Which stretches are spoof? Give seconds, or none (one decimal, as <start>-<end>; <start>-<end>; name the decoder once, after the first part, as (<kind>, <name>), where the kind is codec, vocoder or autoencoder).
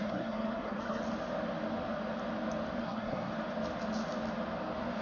0.0-1.0 (codec, SNAC); 2.8-3.3